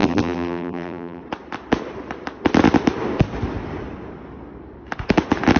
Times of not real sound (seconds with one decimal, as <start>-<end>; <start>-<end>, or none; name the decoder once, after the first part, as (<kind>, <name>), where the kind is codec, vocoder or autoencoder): 0.0-1.2 (vocoder, BigVGAN v2)

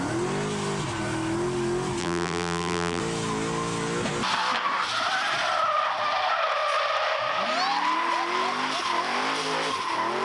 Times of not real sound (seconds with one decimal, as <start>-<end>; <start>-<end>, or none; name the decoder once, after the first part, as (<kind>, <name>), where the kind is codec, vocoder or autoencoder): 2.0-3.0 (vocoder, BigVGAN v2)

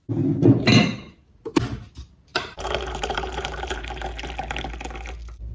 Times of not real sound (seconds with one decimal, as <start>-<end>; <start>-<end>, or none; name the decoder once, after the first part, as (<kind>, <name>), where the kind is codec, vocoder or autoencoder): 2.3-4.3 (vocoder, BigVGAN v2)

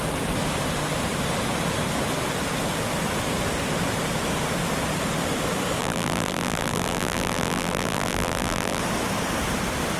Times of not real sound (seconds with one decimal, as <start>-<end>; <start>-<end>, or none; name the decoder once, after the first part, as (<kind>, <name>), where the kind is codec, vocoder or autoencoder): 5.8-8.8 (vocoder, BigVGAN v2)

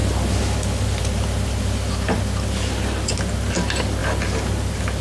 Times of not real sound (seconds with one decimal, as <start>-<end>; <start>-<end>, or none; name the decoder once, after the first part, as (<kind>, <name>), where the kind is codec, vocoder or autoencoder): none